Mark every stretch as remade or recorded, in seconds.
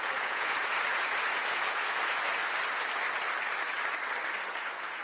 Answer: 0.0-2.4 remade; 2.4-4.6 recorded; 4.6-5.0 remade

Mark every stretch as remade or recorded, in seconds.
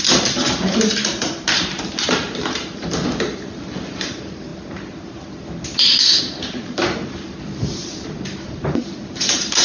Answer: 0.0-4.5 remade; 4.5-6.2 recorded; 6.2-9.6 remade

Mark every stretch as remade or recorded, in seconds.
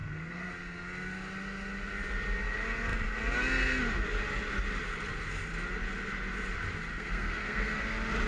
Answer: 0.0-0.5 remade; 0.5-6.9 recorded; 6.9-7.8 remade; 7.8-8.3 recorded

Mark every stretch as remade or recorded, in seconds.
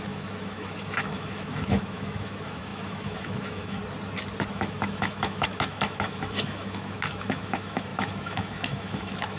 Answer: 0.0-3.8 remade; 3.8-4.5 recorded; 4.5-9.4 remade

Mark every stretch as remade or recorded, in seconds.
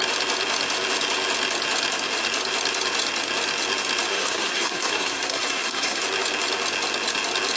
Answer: 0.0-4.1 recorded; 4.1-6.0 remade; 6.0-7.6 recorded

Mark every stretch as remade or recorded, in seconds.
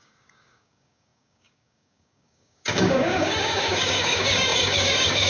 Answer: 0.0-5.3 remade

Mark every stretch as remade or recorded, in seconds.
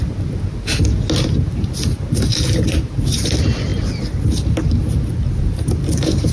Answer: 0.0-2.3 recorded; 2.3-3.2 remade; 3.2-6.3 recorded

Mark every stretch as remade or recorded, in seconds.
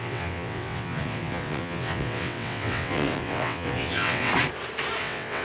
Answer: 0.0-4.3 remade; 4.3-5.0 recorded; 5.0-5.4 remade